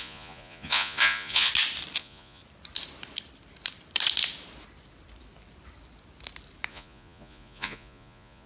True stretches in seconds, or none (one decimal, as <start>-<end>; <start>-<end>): 1.5-2.0; 2.4-6.7